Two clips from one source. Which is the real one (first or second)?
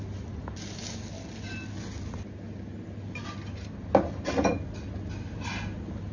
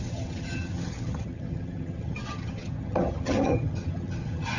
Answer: first